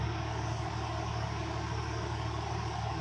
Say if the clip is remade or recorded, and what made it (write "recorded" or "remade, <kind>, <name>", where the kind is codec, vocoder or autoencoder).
remade, codec, DAC